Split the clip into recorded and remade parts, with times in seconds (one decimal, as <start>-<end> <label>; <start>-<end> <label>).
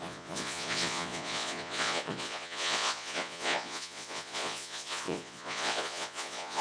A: 0.0-6.6 remade